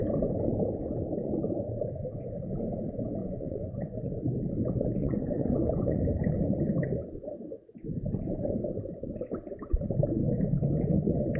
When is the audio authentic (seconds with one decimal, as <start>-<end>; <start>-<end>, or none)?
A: 0.0-3.2; 4.1-5.0; 6.0-11.4